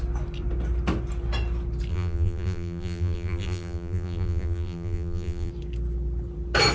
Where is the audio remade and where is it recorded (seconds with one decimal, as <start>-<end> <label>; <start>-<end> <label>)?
0.0-1.9 recorded; 1.9-5.5 remade; 5.5-6.7 recorded